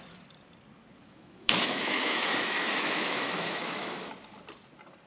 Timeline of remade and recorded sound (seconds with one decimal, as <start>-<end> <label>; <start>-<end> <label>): 0.0-1.0 recorded; 1.0-4.1 remade; 4.1-5.1 recorded